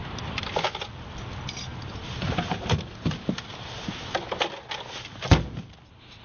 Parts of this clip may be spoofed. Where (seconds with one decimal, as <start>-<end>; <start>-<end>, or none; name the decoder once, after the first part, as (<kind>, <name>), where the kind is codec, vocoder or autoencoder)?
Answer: none